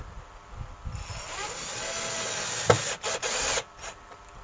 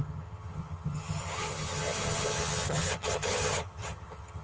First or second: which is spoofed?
second